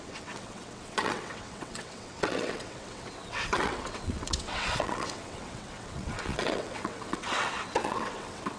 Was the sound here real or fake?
fake